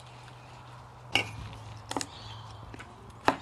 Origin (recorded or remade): recorded